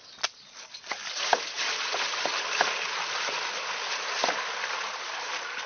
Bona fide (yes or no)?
yes